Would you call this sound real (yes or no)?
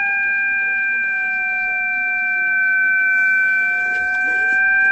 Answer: yes